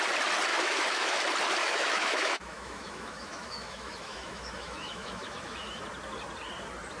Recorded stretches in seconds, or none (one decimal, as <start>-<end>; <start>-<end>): 0.0-0.5; 1.2-1.6; 5.8-7.0